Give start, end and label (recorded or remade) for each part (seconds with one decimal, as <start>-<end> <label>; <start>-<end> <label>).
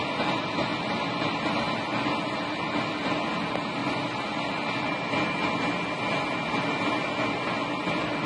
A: 0.0-8.3 recorded